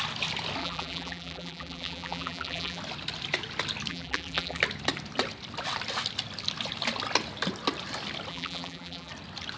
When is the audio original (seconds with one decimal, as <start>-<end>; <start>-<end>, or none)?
0.0-0.6; 2.8-3.9; 4.6-8.3; 9.1-9.6